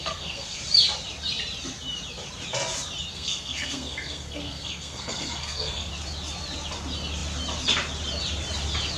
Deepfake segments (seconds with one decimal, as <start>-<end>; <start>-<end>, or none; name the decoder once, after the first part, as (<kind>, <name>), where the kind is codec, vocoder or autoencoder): 0.0-0.6 (codec, SNAC); 3.1-5.9